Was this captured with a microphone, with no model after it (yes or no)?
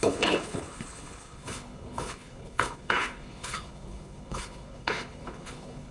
no